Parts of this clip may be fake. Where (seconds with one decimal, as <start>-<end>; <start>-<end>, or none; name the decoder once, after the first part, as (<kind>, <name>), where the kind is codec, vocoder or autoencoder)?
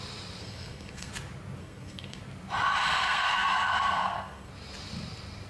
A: 0.4-1.1 (codec, SNAC); 1.6-2.2; 3.0-4.5